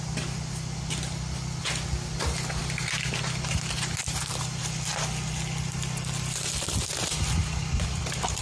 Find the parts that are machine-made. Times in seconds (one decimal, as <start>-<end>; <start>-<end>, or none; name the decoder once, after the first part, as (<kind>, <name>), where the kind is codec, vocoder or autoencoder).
4.0-4.6 (vocoder, BigVGAN v2)